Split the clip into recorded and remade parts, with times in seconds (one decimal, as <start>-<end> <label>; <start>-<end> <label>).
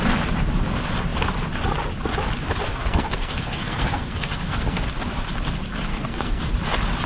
0.0-2.7 recorded; 2.7-4.8 remade; 4.8-5.9 recorded; 5.9-6.5 remade; 6.5-7.1 recorded